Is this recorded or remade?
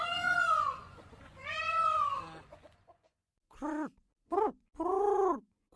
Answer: remade